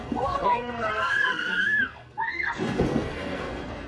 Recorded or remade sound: remade